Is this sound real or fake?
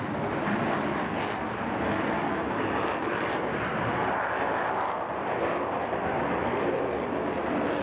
real